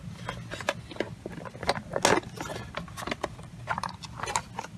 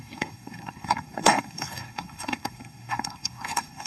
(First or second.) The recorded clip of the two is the first